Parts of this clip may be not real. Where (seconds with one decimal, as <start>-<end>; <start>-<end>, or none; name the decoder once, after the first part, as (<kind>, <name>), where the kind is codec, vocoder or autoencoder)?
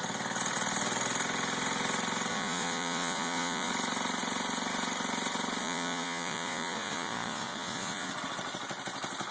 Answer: 2.3-3.7 (vocoder, Vocos); 5.6-8.1